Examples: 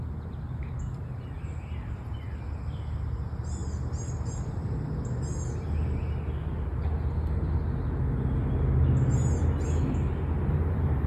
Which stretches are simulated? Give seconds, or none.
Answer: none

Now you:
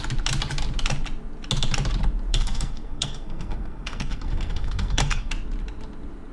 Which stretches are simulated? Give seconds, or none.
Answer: 2.3-5.3 (codec, SNAC)

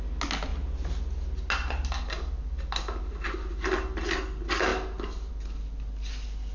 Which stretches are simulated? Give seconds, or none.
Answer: none

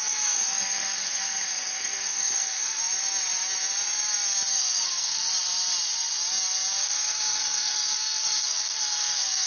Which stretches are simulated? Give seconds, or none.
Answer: 0.0-2.8 (codec, SNAC); 4.5-5.3; 6.8-9.5

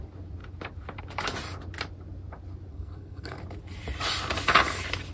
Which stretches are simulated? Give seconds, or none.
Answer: 2.7-3.4 (codec, SNAC)

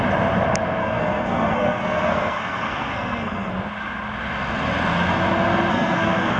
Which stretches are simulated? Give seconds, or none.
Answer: 0.8-3.5 (codec, SNAC); 5.7-6.4